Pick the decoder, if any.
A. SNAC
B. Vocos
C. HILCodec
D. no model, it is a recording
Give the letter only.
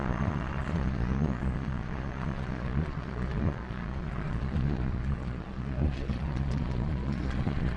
B